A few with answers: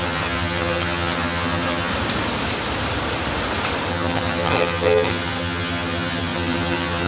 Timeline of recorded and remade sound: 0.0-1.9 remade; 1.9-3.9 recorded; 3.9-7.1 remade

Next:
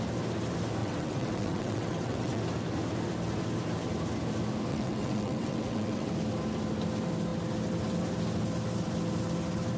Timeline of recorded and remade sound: 0.0-0.8 recorded; 0.8-2.4 remade; 2.4-4.7 recorded; 4.7-6.1 remade; 6.1-9.8 recorded

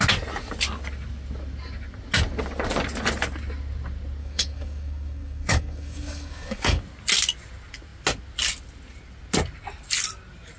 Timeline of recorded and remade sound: 0.0-4.2 recorded; 4.2-6.8 remade; 6.8-10.6 recorded

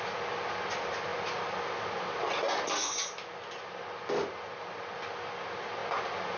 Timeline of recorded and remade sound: 0.0-6.4 recorded

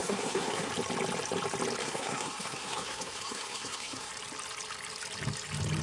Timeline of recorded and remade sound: 0.0-0.7 remade; 0.7-1.8 recorded; 1.8-4.1 remade; 4.1-5.8 recorded

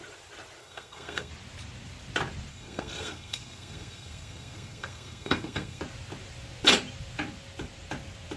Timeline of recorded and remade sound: 0.0-0.6 recorded; 0.6-1.3 remade; 1.3-2.5 recorded; 2.5-5.8 remade; 5.8-8.4 recorded

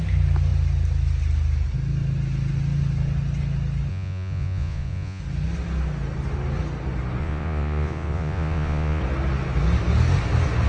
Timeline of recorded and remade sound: 0.0-3.9 recorded; 3.9-5.2 remade; 5.2-7.2 recorded; 7.2-9.0 remade; 9.0-10.7 recorded